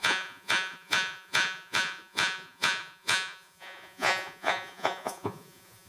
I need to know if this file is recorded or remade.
remade